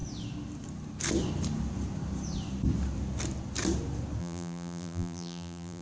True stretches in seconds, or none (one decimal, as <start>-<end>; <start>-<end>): 0.0-4.2